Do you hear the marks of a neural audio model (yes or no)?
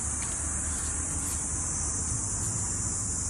yes